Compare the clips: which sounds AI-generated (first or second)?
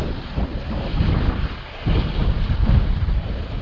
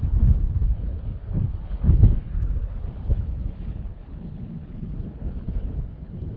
second